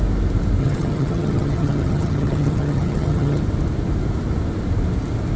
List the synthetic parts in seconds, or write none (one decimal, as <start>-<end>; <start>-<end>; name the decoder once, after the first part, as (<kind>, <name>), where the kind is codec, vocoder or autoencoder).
0.6-3.4 (vocoder, HiFi-GAN)